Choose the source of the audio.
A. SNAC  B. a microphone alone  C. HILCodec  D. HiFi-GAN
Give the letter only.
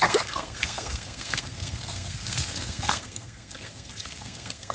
A